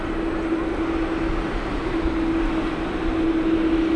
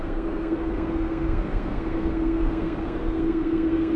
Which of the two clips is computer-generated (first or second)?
second